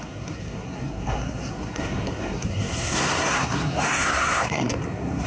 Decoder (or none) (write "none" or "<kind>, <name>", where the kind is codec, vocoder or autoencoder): codec, SNAC